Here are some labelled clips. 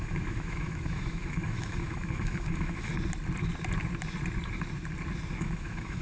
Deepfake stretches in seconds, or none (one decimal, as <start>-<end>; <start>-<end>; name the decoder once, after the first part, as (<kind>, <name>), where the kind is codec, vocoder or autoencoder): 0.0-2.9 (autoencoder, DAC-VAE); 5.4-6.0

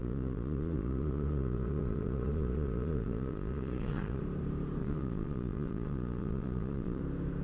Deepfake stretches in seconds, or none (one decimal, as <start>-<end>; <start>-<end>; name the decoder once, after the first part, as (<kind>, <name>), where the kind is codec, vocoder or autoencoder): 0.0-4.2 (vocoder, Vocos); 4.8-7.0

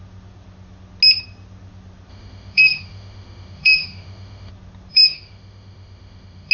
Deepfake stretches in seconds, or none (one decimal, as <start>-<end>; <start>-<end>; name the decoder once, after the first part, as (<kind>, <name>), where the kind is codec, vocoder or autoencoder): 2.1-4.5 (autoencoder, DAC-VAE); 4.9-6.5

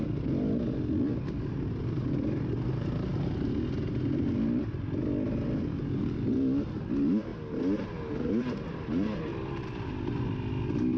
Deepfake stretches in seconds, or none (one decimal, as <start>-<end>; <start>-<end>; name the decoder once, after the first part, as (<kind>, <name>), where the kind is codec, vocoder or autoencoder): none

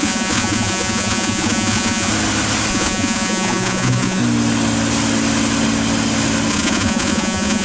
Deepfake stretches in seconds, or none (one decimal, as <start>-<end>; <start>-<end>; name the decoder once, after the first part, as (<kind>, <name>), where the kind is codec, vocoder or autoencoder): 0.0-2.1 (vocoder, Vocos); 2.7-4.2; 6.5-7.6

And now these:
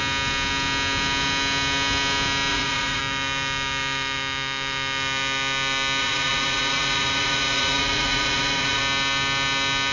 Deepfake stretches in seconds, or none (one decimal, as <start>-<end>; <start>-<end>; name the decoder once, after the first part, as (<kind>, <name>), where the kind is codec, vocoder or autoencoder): 2.5-3.0 (vocoder, Vocos); 6.0-8.8

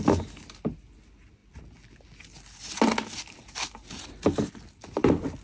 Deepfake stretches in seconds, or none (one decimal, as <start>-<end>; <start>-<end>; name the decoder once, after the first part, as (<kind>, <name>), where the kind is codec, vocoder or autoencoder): none